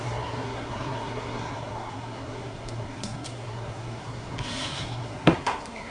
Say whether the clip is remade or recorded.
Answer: remade